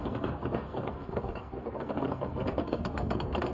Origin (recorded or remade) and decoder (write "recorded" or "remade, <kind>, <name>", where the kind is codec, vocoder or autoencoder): remade, codec, SNAC